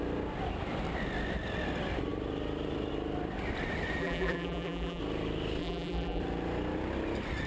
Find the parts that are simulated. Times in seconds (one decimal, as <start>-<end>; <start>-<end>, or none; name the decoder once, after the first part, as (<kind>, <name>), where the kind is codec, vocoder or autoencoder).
4.0-5.0 (vocoder, BigVGAN v2); 5.6-6.2